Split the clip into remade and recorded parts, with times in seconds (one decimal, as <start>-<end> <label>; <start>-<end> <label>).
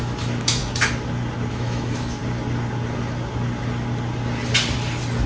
0.0-0.6 remade; 0.6-1.5 recorded; 1.5-2.2 remade; 2.2-5.3 recorded